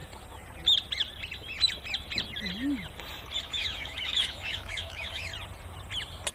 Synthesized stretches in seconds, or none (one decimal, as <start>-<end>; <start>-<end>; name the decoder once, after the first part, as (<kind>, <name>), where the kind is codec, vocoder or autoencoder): 3.4-5.3 (autoencoder, DAC-VAE)